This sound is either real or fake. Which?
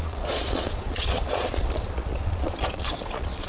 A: fake